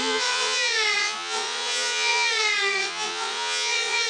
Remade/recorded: remade